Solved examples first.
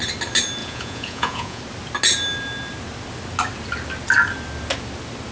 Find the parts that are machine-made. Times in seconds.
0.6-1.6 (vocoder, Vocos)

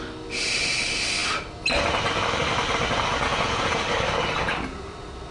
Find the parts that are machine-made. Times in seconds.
3.3-3.8 (vocoder, Vocos)